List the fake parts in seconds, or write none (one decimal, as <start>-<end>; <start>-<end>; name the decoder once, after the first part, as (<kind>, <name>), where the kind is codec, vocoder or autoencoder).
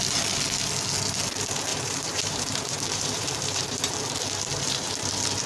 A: 1.7-3.9 (vocoder, BigVGAN v2); 4.5-5.1